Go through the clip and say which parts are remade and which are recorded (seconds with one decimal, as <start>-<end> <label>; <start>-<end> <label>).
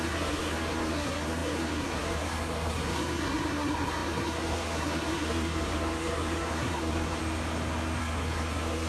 0.0-7.2 remade; 7.2-8.0 recorded; 8.0-8.9 remade